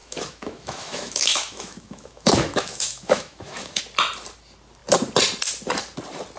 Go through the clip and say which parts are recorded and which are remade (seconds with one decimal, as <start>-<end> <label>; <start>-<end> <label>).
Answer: 0.0-3.8 remade; 3.8-6.4 recorded